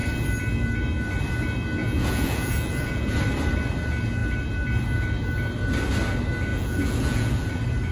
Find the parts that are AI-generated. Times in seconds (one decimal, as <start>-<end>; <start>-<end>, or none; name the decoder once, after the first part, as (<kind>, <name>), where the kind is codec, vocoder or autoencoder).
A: 1.8-3.2 (vocoder, Vocos); 6.5-7.5